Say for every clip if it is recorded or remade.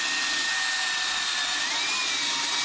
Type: recorded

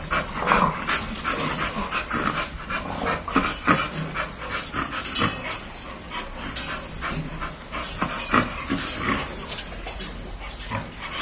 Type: recorded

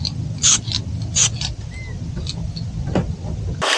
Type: recorded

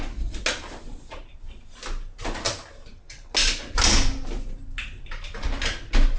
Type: recorded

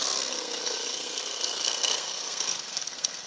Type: remade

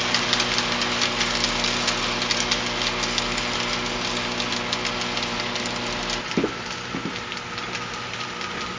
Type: recorded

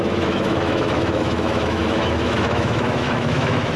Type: remade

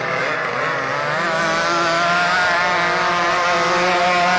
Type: recorded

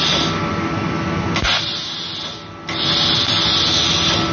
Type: recorded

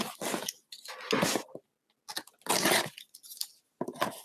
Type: recorded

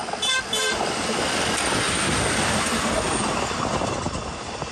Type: recorded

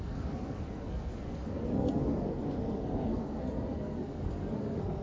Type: remade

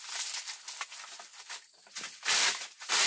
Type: recorded